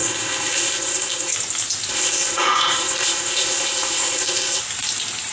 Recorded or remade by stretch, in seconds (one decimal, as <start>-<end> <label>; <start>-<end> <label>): 0.0-1.3 remade; 1.3-1.9 recorded; 1.9-4.6 remade; 4.6-5.3 recorded